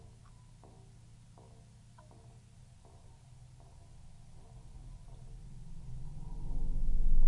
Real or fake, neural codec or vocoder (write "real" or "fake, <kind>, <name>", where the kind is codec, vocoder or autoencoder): real